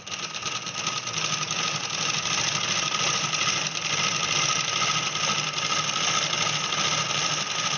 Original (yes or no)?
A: yes